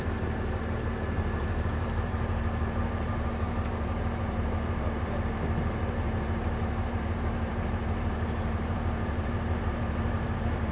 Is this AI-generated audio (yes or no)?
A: yes